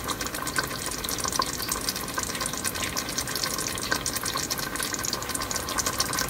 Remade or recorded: recorded